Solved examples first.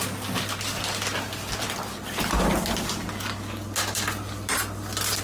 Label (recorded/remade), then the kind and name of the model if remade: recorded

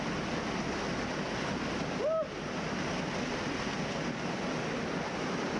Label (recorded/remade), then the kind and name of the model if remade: recorded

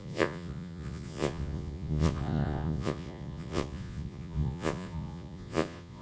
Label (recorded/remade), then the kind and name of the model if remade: remade, vocoder, Vocos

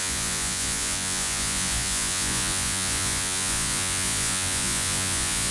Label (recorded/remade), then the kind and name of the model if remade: remade, vocoder, Vocos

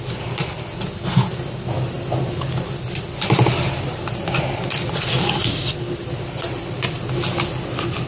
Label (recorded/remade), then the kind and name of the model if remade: recorded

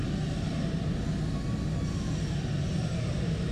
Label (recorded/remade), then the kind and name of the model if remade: recorded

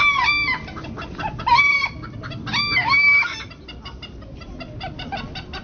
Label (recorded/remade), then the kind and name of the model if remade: recorded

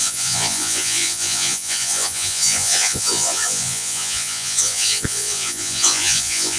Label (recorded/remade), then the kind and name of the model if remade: remade, vocoder, Vocos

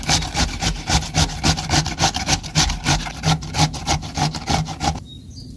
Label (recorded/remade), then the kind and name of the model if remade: recorded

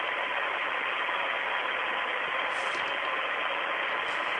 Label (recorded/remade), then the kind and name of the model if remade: recorded